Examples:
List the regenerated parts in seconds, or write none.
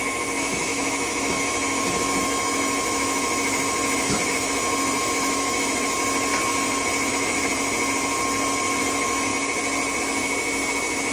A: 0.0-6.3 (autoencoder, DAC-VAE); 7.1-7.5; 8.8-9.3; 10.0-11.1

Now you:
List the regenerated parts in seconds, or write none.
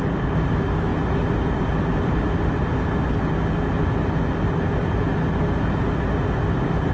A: none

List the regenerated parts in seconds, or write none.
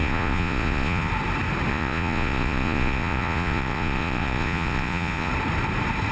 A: 0.0-1.1 (vocoder, Vocos); 1.7-5.3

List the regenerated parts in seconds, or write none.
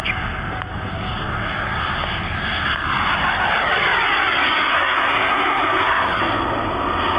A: 4.7-6.2 (codec, SNAC)